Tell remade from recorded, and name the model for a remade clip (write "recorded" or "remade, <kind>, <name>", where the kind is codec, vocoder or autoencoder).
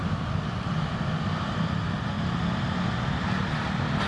recorded